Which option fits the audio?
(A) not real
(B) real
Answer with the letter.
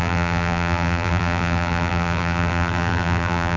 A